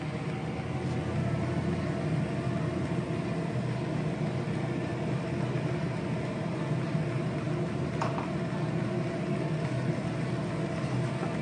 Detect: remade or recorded recorded